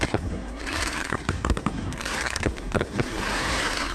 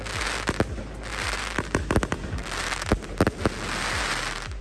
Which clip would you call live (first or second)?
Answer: second